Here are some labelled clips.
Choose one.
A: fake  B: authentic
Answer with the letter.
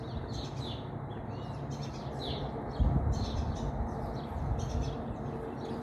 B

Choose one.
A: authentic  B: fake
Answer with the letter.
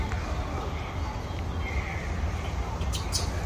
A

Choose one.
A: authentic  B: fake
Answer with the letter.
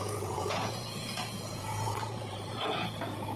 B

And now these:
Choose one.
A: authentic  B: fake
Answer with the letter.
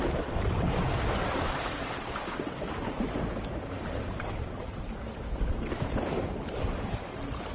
B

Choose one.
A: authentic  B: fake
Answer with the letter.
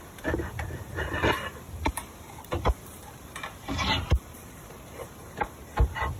B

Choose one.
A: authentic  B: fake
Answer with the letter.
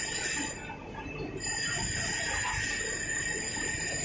A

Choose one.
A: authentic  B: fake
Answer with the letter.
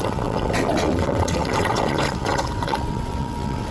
B